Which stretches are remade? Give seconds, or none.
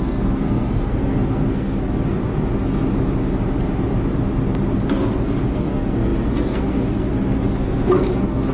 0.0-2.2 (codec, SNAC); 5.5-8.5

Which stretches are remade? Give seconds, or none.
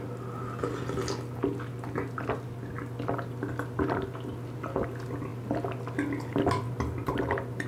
none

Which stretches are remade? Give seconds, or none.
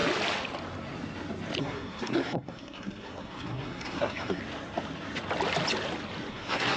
1.6-4.4 (codec, SNAC); 6.3-6.8